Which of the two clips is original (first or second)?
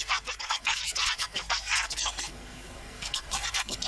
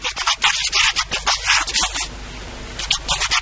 second